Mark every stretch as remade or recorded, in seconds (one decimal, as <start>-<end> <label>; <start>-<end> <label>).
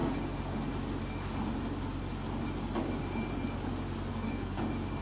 0.0-4.1 recorded; 4.1-4.6 remade; 4.6-5.0 recorded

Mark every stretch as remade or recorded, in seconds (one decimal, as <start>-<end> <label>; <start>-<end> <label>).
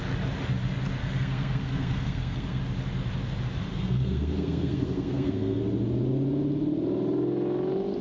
0.0-1.0 recorded; 1.0-2.6 remade; 2.6-3.7 recorded; 3.7-5.6 remade; 5.6-8.0 recorded